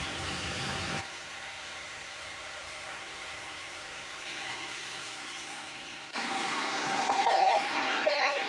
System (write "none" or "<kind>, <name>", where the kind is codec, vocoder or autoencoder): codec, SNAC